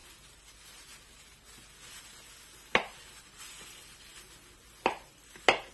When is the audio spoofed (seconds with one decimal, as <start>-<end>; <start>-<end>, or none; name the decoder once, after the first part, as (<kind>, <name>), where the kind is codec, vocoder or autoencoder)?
none